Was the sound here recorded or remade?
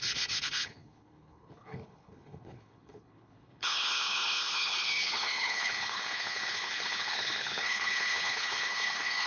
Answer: remade